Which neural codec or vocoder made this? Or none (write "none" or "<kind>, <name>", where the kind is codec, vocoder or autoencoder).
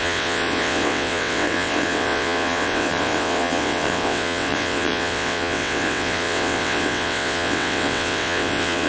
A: vocoder, WaveNeXt